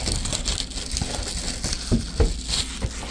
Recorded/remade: recorded